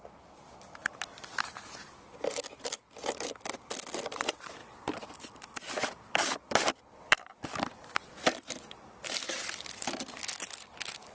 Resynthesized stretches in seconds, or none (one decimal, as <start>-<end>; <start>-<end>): 4.6-9.6